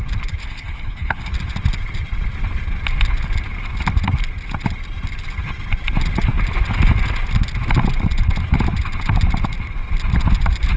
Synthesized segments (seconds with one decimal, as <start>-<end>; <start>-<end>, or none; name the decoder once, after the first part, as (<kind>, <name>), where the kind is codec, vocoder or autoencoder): 0.4-1.3 (codec, HILCodec)